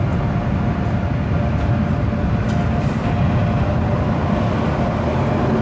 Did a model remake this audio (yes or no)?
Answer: no